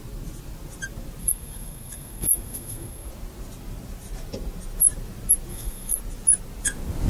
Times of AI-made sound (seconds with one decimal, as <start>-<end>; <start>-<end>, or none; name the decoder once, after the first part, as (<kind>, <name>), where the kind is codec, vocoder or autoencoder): 1.2-3.1 (codec, SNAC); 5.5-6.0

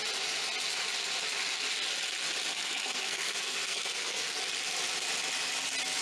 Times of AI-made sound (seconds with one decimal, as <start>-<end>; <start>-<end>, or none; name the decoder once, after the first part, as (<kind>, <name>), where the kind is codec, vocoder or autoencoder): 2.5-4.4 (codec, SNAC)

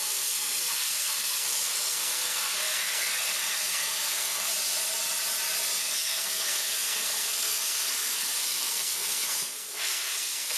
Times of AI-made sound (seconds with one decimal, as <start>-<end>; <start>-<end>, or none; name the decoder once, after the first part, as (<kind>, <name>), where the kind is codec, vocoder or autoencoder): 0.0-4.5 (codec, SNAC); 5.8-10.6

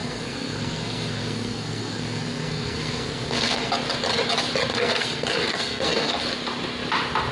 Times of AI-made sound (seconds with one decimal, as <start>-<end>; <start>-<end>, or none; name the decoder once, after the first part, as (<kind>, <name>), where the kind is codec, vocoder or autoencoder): 0.0-3.7 (codec, SNAC); 4.7-6.2

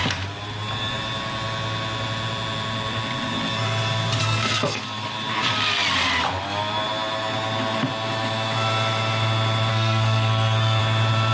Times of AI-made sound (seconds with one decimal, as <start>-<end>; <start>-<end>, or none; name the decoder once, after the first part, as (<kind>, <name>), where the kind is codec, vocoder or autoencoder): 4.2-4.8 (codec, SNAC); 9.7-10.8

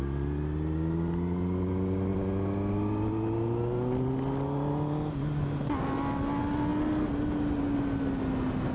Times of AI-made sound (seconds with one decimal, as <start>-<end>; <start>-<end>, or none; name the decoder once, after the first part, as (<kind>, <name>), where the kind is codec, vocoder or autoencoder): none